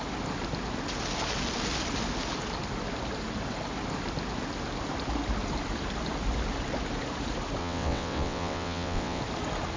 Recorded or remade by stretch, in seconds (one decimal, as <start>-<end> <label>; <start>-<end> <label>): 0.0-7.6 recorded; 7.6-9.2 remade; 9.2-9.8 recorded